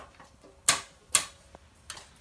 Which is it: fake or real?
real